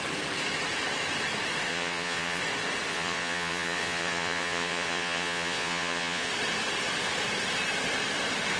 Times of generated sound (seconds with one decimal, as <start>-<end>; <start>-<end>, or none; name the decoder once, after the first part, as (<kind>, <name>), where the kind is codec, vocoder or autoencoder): 1.7-2.4 (vocoder, Vocos); 2.9-6.3